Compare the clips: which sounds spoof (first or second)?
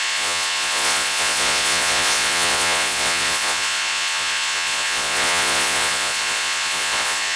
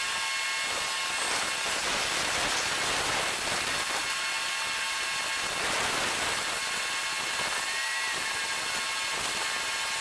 first